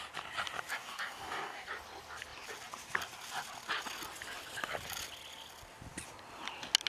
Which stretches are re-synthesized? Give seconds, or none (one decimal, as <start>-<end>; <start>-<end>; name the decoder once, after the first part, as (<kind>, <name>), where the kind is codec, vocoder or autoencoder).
0.7-1.7 (codec, DAC)